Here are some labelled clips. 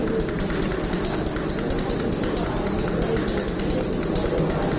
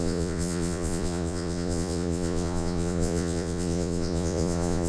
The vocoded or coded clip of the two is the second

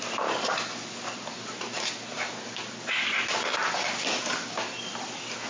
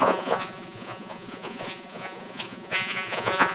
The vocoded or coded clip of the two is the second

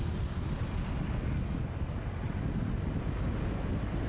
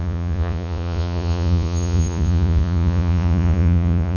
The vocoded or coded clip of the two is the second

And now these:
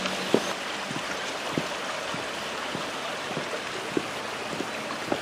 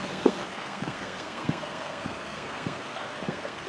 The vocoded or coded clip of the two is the second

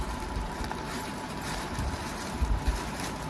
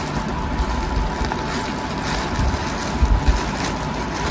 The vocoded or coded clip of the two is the first